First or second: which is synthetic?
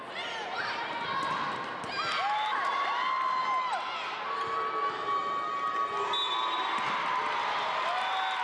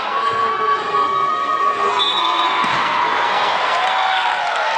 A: second